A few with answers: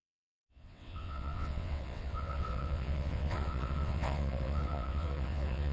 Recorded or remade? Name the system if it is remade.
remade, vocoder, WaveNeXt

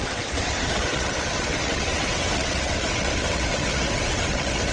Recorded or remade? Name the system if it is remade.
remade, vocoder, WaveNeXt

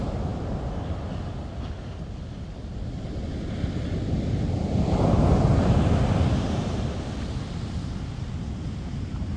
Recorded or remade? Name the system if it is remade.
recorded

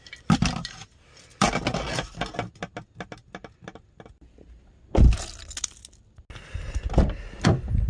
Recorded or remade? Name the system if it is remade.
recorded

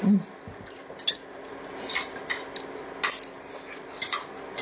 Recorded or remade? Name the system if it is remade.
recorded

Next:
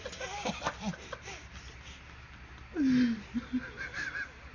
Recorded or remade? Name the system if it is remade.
recorded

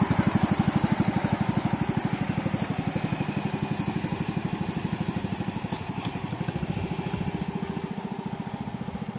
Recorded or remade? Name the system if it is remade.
recorded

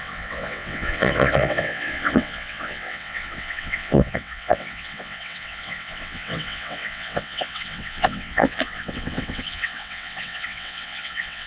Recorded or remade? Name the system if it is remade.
remade, vocoder, WaveNeXt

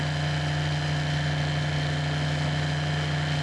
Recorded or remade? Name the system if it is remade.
recorded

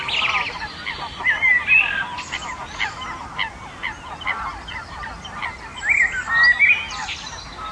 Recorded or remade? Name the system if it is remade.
recorded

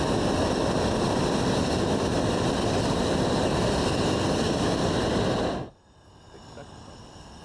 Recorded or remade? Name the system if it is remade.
recorded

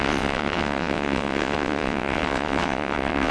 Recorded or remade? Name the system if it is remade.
remade, vocoder, WaveNeXt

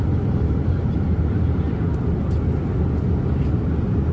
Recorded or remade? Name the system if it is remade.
recorded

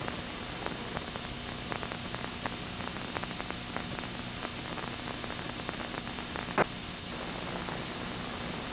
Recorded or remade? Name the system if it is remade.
recorded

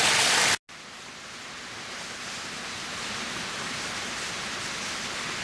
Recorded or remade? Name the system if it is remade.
recorded